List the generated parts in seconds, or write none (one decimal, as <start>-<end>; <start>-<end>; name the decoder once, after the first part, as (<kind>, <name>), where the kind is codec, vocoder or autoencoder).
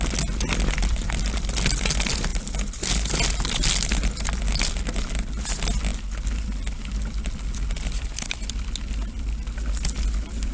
none